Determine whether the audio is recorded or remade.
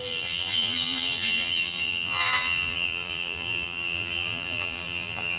remade